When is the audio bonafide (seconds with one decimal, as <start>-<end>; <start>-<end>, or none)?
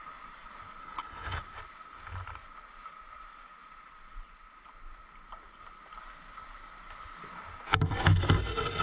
0.0-0.8; 1.4-8.8